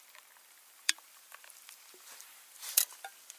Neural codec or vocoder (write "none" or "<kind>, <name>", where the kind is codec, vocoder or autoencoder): vocoder, BigVGAN v2